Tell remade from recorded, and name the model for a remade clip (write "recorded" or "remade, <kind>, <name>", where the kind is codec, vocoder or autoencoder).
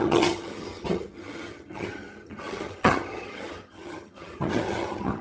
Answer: remade, vocoder, HiFi-GAN